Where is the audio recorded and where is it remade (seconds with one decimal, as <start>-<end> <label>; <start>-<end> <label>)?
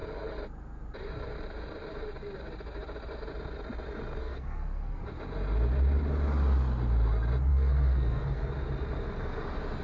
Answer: 0.0-4.2 recorded; 4.2-5.0 remade; 5.0-7.5 recorded; 7.5-8.5 remade; 8.5-9.8 recorded